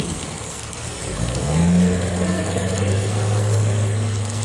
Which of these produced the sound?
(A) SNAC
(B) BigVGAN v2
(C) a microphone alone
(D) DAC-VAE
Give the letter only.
A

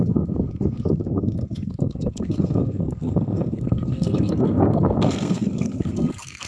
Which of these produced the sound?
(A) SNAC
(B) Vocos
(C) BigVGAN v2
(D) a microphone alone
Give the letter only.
A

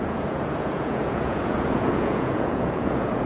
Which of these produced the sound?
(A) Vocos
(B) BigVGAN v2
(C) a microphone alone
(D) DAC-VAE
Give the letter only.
A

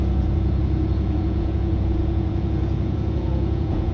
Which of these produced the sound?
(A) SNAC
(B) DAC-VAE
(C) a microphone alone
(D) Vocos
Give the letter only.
D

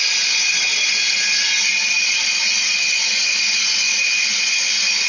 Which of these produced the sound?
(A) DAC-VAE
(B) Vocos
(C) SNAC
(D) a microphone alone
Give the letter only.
D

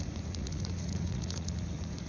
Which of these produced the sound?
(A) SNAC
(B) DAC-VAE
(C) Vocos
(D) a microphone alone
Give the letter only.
C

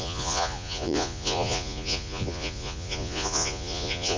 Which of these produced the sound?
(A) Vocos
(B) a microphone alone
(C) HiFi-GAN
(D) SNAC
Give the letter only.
A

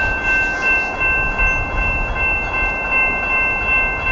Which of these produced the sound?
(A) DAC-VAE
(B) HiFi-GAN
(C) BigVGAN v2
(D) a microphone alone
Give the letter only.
D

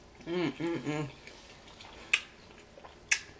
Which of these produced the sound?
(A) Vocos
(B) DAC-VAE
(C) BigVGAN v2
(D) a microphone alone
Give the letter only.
D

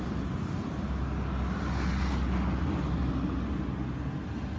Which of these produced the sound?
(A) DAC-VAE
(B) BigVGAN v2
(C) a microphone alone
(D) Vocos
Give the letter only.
C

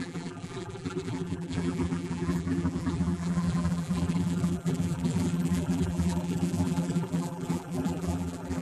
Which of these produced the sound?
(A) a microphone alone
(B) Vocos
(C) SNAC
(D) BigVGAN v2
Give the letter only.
D